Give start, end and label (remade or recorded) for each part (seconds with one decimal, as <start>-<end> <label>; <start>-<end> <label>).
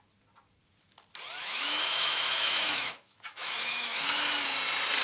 0.0-1.4 recorded; 1.4-4.3 remade; 4.3-5.0 recorded